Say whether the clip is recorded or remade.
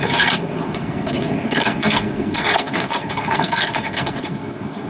remade